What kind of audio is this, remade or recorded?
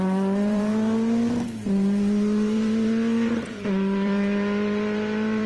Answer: remade